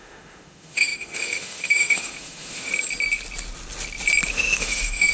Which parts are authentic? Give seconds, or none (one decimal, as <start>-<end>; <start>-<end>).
2.7-4.3